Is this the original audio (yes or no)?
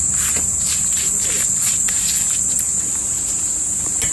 no